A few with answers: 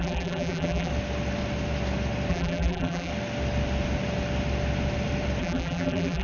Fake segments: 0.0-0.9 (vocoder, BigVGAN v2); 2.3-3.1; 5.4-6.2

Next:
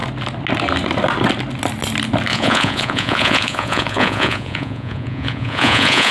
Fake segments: 2.3-6.1 (vocoder, Vocos)